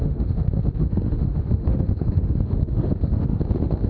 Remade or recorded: remade